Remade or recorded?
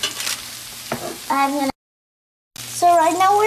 recorded